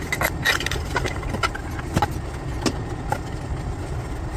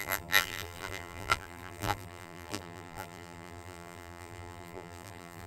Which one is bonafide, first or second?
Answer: first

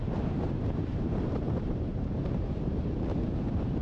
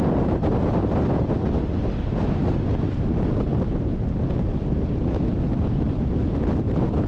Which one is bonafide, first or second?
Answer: second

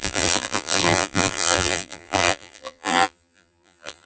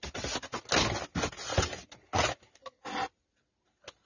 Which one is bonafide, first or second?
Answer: second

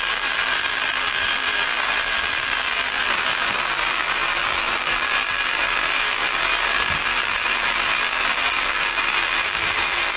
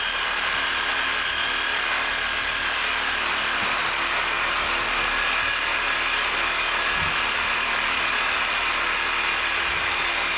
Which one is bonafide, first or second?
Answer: second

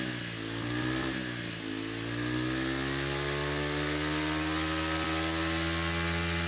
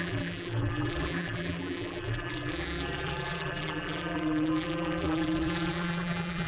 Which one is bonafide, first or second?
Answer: first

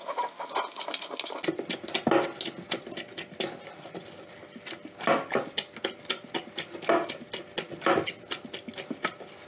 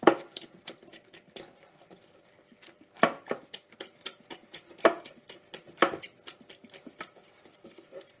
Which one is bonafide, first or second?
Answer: first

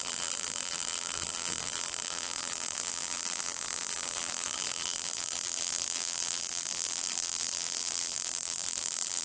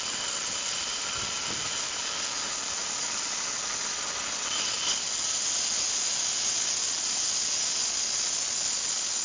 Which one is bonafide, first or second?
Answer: second